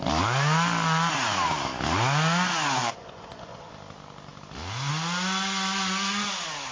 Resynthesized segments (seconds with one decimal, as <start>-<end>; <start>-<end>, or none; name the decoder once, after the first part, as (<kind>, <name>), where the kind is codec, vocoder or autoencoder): 2.8-3.7 (vocoder, Vocos)